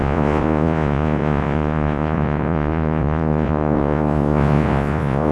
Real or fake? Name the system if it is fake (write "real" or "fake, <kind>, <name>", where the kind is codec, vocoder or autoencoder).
fake, vocoder, Vocos